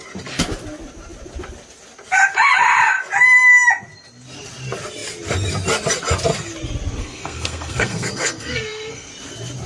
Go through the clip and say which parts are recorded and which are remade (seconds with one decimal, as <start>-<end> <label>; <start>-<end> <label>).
0.0-7.0 recorded; 7.0-9.1 remade; 9.1-9.7 recorded